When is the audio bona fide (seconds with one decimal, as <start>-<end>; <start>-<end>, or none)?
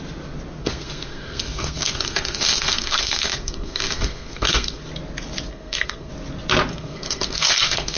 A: 0.0-0.6; 4.9-5.5; 6.1-6.7